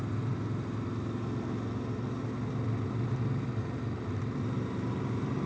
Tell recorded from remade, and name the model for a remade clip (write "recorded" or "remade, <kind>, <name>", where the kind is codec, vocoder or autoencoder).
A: recorded